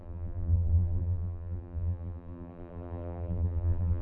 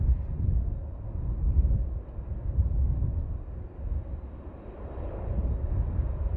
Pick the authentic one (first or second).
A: second